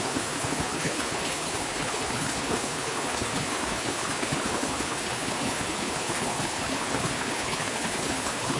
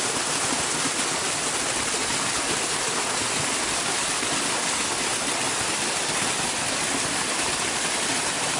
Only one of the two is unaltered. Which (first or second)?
second